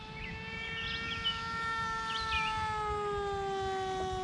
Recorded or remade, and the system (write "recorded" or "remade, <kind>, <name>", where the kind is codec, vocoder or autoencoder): recorded